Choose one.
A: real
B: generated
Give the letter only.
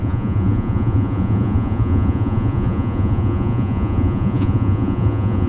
B